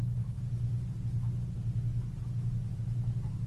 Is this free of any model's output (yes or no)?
yes